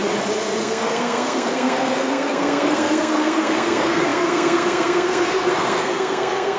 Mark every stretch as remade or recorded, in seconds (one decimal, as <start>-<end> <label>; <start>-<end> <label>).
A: 0.0-0.6 recorded; 0.6-6.6 remade